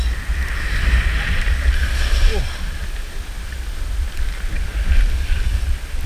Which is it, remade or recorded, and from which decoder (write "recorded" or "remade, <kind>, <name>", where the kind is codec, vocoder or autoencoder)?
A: recorded